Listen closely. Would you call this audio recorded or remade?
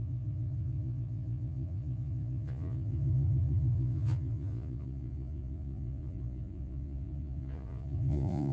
remade